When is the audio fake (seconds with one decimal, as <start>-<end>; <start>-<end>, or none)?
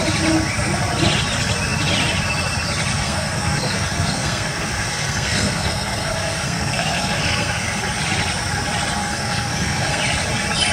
2.9-7.8; 9.0-10.0